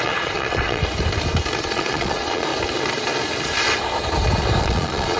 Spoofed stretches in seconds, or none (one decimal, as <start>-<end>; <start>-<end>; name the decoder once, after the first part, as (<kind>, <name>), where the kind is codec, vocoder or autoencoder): 0.0-0.8 (vocoder, Vocos); 1.6-2.5; 4.6-5.2